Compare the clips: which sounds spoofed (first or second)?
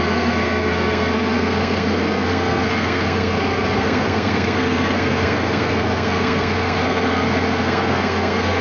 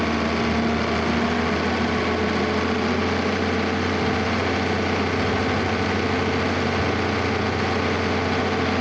first